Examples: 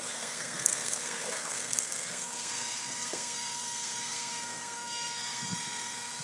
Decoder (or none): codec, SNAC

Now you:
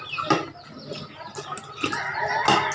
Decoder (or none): none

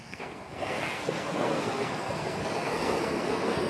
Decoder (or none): codec, SNAC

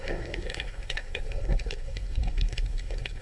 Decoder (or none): codec, SNAC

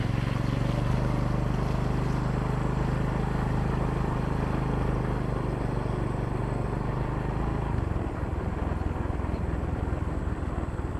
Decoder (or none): none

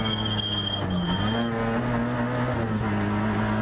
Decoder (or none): none